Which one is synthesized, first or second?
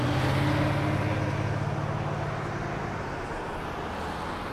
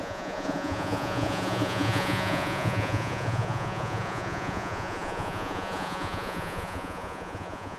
second